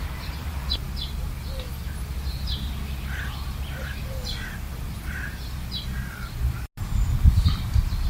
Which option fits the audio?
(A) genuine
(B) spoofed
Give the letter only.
A